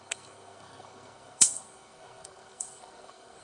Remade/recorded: remade